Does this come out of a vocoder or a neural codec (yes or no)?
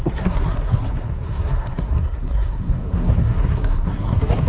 yes